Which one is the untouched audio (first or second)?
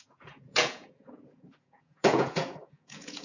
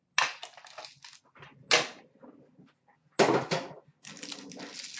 second